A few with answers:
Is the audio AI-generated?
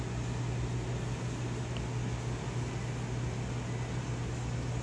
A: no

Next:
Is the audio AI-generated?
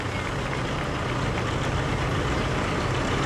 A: no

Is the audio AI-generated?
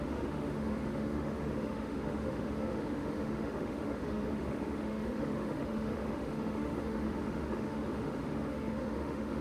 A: yes